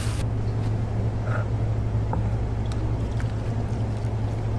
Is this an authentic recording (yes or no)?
yes